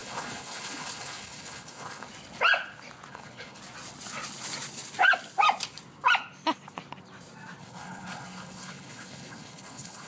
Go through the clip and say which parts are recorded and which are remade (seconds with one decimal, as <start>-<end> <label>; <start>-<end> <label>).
0.0-2.1 remade; 2.1-3.1 recorded; 3.1-3.6 remade; 3.6-7.6 recorded; 7.6-10.1 remade